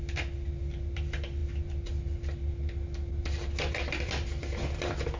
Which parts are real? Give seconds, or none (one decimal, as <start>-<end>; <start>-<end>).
0.0-5.2